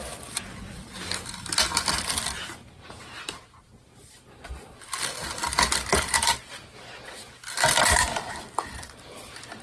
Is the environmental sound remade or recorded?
recorded